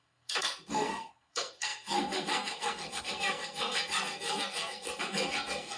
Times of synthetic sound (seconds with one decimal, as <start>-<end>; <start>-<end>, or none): 0.0-5.8